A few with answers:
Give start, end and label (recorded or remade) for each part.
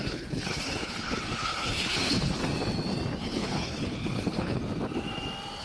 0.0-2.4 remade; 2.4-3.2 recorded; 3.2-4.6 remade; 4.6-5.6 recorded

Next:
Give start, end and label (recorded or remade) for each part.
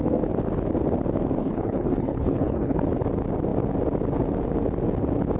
0.0-1.4 recorded; 1.4-2.8 remade; 2.8-5.4 recorded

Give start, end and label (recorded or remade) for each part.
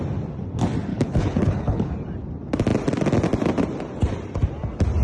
0.0-0.9 recorded; 0.9-1.9 remade; 1.9-5.0 recorded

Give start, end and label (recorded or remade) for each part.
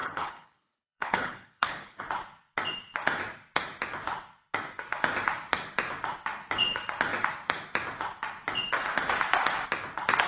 0.0-2.0 remade; 2.0-10.3 recorded